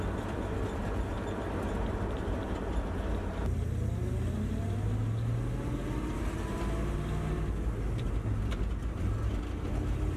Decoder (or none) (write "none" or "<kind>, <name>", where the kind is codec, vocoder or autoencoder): none